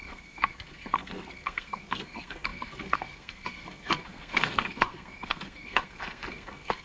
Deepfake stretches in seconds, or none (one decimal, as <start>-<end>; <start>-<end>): 0.0-6.8